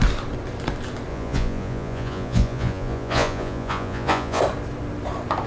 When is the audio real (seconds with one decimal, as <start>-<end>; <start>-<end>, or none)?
0.0-1.1; 4.4-5.5